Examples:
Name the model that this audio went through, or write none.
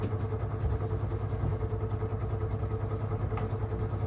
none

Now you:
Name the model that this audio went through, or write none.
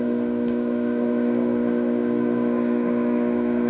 codec, SNAC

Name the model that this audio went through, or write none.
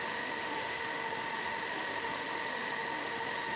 autoencoder, DAC-VAE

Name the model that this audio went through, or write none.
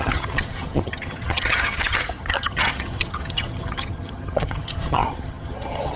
vocoder, HiFi-GAN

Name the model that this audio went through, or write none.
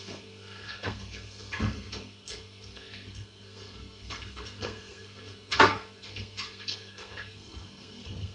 codec, SNAC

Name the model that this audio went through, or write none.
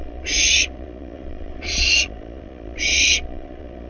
vocoder, Vocos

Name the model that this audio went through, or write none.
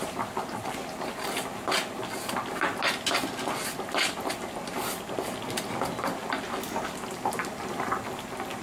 none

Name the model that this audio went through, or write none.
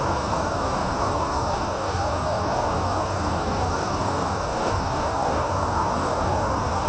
codec, DAC